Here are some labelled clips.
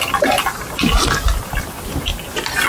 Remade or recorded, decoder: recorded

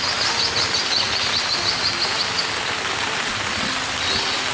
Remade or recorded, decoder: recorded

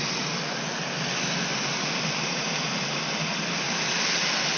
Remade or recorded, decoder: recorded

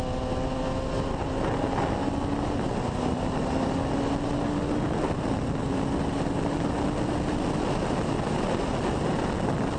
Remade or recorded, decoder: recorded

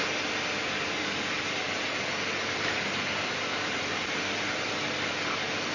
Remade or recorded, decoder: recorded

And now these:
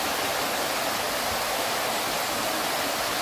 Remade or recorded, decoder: recorded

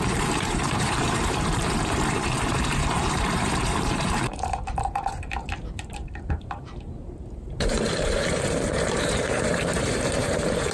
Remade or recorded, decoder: remade, vocoder, BigVGAN v2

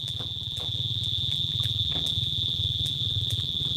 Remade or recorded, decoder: remade, vocoder, BigVGAN v2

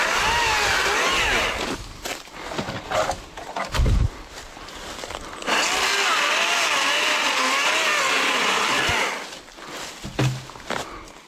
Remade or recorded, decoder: recorded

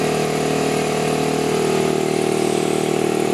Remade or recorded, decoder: recorded